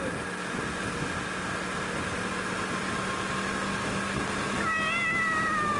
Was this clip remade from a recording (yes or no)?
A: no